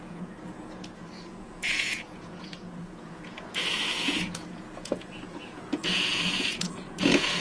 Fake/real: fake